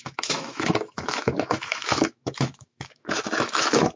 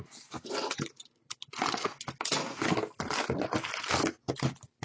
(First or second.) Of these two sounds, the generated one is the first